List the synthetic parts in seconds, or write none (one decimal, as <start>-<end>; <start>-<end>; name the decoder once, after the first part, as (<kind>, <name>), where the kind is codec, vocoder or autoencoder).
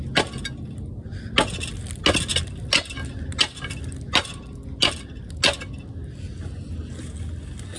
none